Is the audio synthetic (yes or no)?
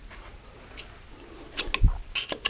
no